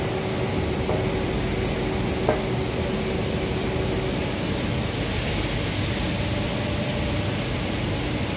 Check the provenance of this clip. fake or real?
real